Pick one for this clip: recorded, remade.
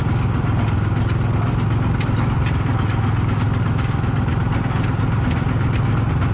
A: recorded